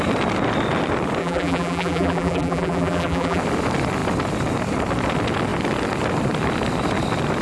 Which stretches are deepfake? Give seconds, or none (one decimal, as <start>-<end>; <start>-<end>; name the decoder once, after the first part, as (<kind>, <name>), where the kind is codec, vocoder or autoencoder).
1.2-3.4 (vocoder, BigVGAN v2)